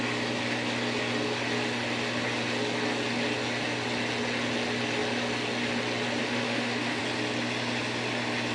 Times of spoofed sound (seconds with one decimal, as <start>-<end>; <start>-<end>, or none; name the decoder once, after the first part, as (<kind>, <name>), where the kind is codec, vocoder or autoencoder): 6.2-7.0 (autoencoder, DAC-VAE)